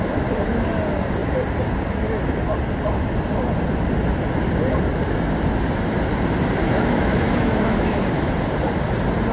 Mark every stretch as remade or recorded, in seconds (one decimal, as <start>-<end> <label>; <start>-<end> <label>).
0.0-6.6 recorded; 6.6-8.0 remade; 8.0-9.3 recorded

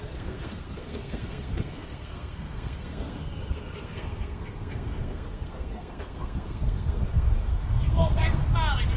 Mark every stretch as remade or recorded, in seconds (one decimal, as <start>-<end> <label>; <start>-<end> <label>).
0.0-8.4 remade; 8.4-9.0 recorded